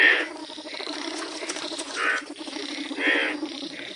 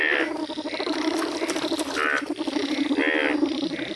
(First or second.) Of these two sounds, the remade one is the first